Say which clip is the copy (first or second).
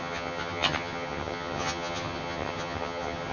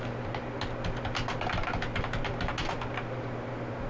first